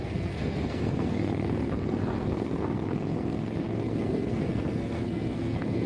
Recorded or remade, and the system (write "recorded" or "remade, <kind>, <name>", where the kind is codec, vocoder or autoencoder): remade, codec, SNAC